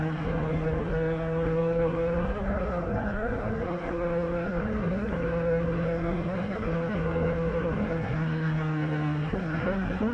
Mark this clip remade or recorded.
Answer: remade